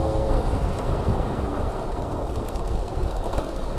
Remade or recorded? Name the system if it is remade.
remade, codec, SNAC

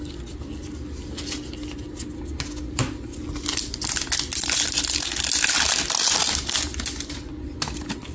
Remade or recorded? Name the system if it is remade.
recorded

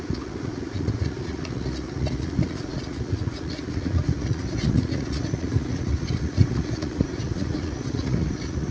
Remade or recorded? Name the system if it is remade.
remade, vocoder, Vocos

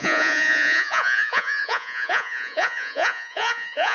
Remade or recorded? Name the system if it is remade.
remade, vocoder, Vocos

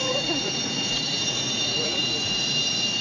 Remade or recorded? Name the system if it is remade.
remade, vocoder, Vocos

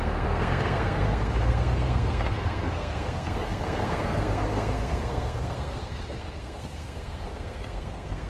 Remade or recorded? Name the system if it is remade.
remade, codec, SNAC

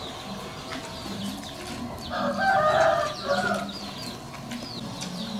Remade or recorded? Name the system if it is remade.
recorded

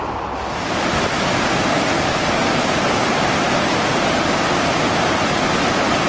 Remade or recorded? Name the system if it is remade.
recorded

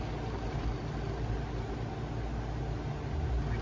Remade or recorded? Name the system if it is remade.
recorded